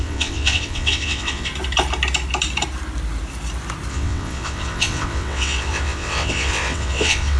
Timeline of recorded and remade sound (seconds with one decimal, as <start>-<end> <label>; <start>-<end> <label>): 0.0-1.5 remade; 1.5-3.9 recorded; 3.9-7.4 remade